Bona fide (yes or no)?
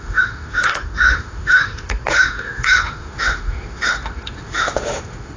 no